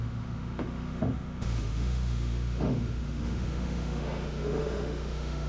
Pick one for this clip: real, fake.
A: fake